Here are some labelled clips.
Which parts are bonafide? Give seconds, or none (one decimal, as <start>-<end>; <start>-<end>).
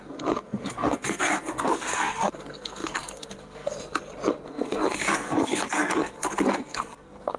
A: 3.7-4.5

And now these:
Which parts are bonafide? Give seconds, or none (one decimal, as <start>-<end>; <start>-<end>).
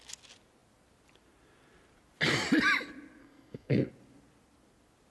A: 0.0-3.2; 3.9-5.1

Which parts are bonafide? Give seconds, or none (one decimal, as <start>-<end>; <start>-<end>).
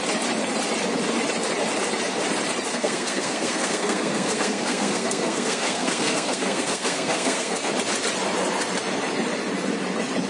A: 0.0-2.7; 7.7-10.3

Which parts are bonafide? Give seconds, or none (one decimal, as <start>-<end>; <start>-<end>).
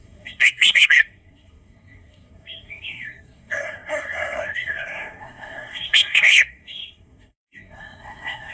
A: none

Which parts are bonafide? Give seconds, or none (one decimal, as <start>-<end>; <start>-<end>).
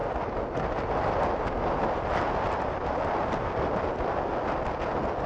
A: 0.0-5.3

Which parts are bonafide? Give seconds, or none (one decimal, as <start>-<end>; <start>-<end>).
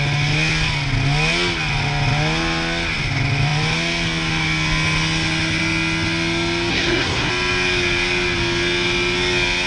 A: 0.0-6.7; 7.3-9.7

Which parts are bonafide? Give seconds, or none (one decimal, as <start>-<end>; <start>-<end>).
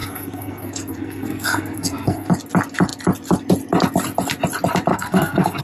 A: 2.3-4.9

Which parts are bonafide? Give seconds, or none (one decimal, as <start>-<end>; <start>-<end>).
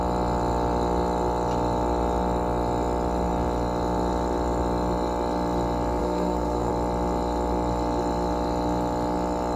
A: 0.0-6.0; 6.7-9.6